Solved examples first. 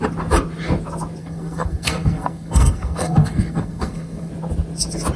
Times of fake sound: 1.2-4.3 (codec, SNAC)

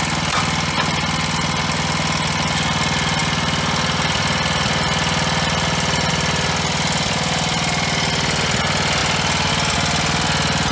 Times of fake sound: none